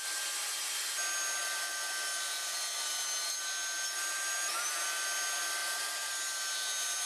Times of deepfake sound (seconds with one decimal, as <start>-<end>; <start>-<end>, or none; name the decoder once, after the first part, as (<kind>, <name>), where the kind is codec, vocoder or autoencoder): none